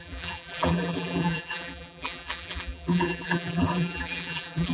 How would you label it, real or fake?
fake